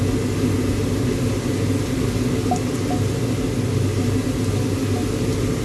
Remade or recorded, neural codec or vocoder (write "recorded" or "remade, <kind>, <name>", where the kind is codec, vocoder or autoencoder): recorded